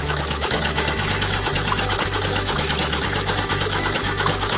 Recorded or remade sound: remade